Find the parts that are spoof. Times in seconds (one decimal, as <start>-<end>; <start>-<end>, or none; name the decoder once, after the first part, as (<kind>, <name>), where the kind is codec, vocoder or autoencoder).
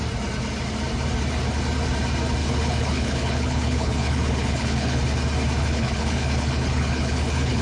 2.4-5.0 (codec, HILCodec); 5.6-7.6